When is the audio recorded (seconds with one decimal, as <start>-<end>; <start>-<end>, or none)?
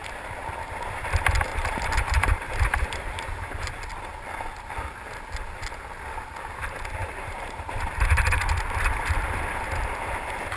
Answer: 0.0-1.5; 3.7-7.0; 7.8-10.6